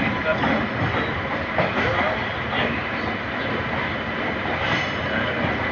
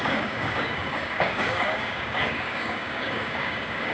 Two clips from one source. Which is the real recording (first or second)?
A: first